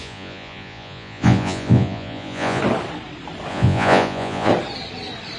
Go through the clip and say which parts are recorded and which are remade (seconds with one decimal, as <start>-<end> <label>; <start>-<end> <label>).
0.0-2.6 remade; 2.6-3.5 recorded; 3.5-4.5 remade; 4.5-5.4 recorded